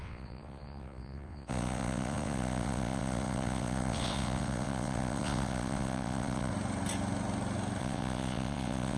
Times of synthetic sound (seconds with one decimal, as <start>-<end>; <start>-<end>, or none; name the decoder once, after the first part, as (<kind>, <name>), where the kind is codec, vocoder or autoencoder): 0.0-6.5 (vocoder, WaveNeXt); 7.8-9.0